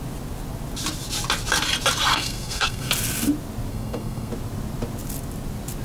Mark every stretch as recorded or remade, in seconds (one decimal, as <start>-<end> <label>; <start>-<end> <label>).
0.0-2.1 recorded; 2.1-2.9 remade; 2.9-3.7 recorded; 3.7-4.3 remade; 4.3-5.8 recorded